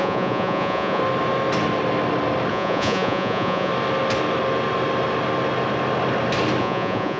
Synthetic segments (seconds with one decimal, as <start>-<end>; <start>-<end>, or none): 0.0-1.0; 2.5-3.7; 6.6-7.2